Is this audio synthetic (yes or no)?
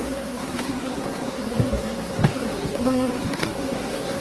yes